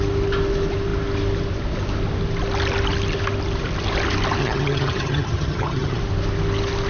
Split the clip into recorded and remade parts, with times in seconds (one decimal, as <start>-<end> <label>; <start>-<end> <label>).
0.0-4.4 recorded; 4.4-6.0 remade; 6.0-6.9 recorded